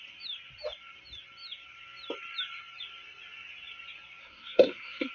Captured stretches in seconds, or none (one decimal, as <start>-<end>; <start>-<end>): 0.0-4.2